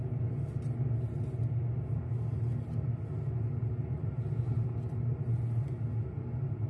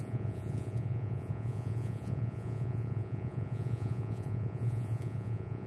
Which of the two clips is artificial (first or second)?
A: second